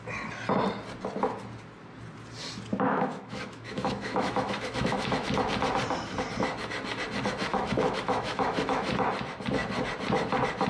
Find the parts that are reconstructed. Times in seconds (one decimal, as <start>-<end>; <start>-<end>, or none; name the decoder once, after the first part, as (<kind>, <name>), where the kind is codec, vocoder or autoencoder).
2.7-5.3 (autoencoder, DAC-VAE); 7.5-8.9